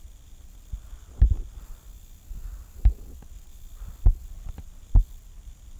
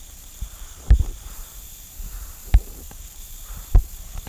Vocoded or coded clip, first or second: second